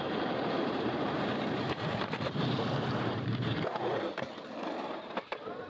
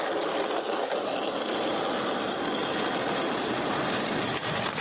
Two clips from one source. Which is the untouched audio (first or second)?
second